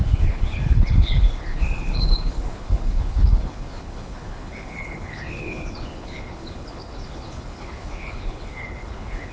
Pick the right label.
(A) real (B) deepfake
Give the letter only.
B